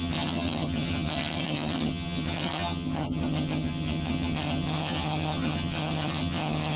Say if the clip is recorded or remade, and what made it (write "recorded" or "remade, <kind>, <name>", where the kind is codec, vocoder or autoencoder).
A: remade, vocoder, HiFi-GAN